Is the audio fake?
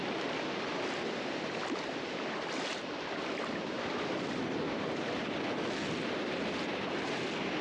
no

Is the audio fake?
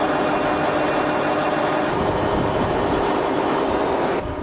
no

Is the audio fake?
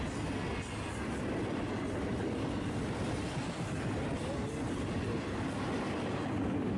no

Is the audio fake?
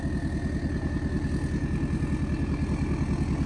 no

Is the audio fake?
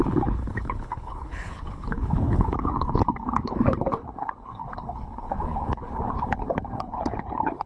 yes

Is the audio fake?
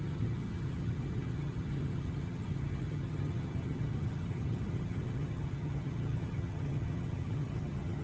yes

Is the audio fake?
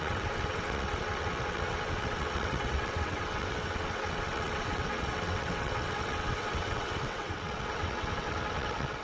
yes